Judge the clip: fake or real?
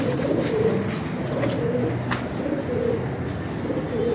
real